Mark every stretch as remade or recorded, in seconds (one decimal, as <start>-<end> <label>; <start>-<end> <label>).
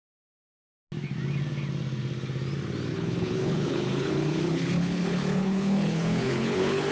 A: 0.0-2.9 recorded; 2.9-6.9 remade